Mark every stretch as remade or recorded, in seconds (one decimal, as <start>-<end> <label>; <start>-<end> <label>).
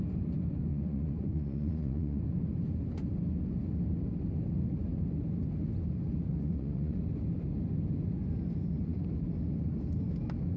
0.0-0.7 recorded; 0.7-2.2 remade; 2.2-6.3 recorded; 6.3-7.0 remade; 7.0-10.6 recorded